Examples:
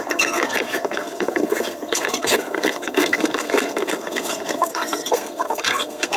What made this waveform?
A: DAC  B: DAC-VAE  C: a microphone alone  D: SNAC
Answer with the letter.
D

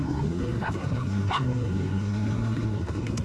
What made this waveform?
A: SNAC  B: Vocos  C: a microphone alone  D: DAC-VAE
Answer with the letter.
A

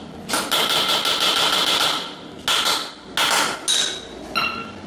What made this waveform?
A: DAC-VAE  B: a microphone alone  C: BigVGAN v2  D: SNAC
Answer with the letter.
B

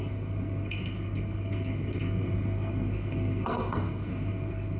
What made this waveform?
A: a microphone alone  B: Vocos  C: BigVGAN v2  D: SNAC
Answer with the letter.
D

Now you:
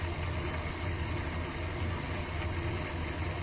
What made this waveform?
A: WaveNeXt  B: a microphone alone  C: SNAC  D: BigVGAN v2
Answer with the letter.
B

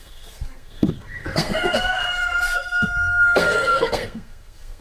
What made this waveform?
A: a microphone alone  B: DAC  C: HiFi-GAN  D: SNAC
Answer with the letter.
D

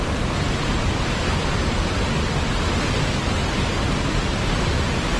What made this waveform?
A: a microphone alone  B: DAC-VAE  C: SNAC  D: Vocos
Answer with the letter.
A